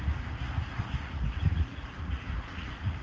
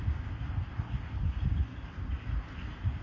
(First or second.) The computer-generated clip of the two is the first